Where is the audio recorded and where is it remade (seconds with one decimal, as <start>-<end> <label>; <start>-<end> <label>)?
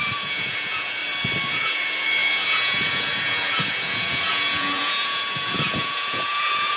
0.0-1.0 remade; 1.0-1.5 recorded; 1.5-6.8 remade